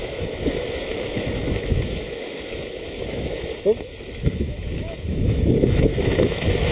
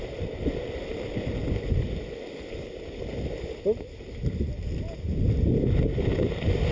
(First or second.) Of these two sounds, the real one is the second